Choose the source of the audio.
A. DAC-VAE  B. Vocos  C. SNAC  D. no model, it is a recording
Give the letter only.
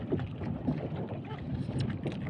D